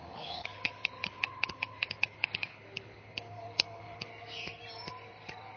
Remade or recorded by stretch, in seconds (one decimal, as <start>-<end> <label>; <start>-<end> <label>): 0.0-4.1 remade; 4.1-5.6 recorded